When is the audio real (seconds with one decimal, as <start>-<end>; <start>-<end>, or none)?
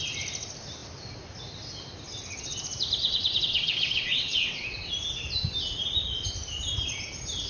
0.0-3.0; 4.9-7.5